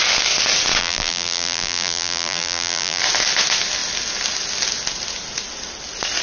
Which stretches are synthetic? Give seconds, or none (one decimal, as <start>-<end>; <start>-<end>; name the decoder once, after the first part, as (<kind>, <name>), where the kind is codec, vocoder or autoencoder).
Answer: 0.8-3.0 (vocoder, BigVGAN v2)